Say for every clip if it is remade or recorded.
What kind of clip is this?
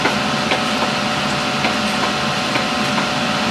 recorded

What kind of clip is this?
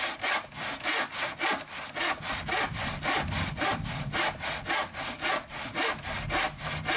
recorded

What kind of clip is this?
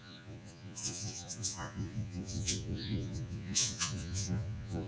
remade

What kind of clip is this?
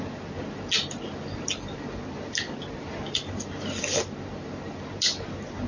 recorded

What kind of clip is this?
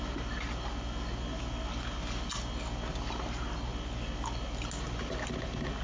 recorded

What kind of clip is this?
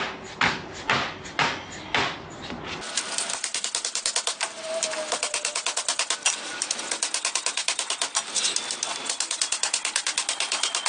recorded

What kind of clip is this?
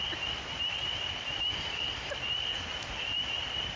recorded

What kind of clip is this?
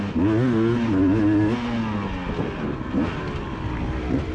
recorded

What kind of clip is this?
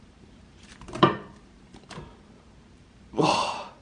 remade